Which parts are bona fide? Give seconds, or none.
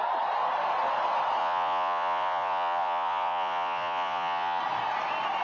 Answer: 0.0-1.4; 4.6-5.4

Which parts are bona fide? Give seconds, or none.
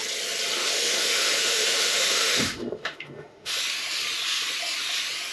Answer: 0.0-0.6; 3.5-5.3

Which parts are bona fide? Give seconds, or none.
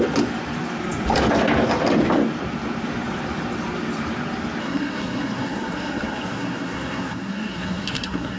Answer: 0.0-4.6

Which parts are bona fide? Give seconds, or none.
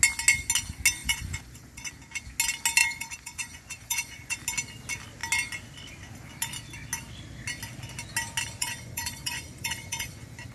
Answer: 0.0-1.0; 1.9-2.8; 4.4-8.6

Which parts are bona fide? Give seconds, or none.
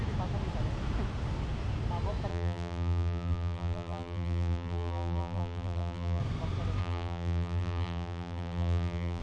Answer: 0.0-2.3; 6.2-6.8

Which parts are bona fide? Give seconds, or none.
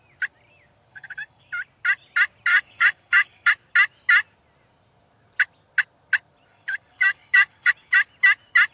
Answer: 0.0-0.9; 1.4-2.5; 3.5-6.5; 7.7-8.7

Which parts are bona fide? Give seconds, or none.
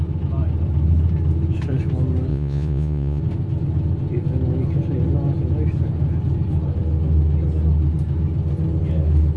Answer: 0.0-2.3; 3.2-9.4